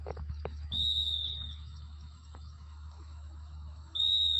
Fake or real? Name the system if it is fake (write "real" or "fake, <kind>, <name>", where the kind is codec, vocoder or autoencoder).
fake, autoencoder, DAC-VAE